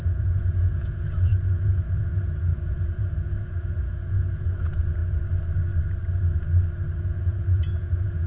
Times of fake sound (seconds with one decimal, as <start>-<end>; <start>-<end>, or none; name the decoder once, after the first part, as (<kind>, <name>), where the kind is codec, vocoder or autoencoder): 0.0-5.0 (vocoder, Vocos); 7.2-8.3